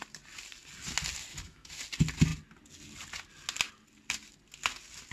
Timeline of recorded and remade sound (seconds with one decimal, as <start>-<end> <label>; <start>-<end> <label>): 0.0-1.3 recorded; 1.3-1.8 remade; 1.8-5.1 recorded